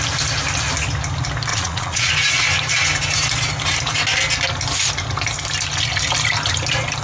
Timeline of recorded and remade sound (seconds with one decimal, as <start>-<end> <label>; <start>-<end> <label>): 0.0-1.5 recorded; 1.5-2.1 remade; 2.1-7.0 recorded